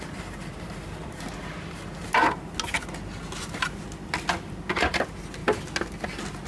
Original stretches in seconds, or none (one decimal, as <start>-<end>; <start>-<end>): 0.0-6.5